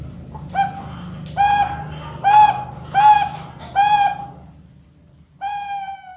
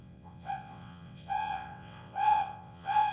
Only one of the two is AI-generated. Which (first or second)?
second